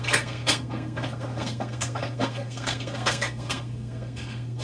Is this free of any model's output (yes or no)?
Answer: no